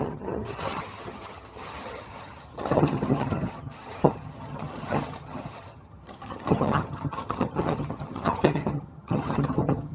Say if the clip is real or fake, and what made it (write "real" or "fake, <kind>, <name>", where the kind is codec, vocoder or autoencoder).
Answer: fake, vocoder, HiFi-GAN